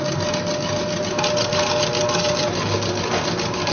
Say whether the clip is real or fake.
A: real